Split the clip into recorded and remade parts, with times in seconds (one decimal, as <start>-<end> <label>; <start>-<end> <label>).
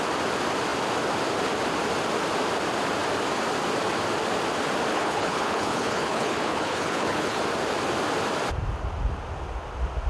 0.0-4.9 recorded; 4.9-7.4 remade; 7.4-10.1 recorded